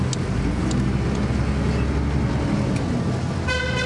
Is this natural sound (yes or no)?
yes